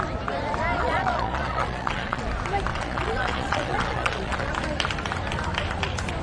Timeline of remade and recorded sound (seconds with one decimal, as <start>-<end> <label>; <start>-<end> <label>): 0.0-0.8 recorded; 0.8-2.3 remade; 2.3-2.7 recorded; 2.7-4.5 remade; 4.5-6.2 recorded